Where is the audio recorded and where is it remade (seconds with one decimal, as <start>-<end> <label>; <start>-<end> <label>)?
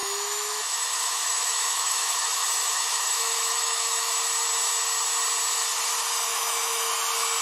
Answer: 0.0-4.1 remade; 4.1-6.3 recorded; 6.3-6.9 remade; 6.9-7.4 recorded